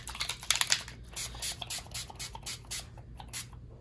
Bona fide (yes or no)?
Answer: yes